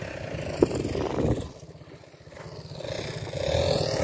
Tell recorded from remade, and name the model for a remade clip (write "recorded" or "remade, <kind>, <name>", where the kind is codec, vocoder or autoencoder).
recorded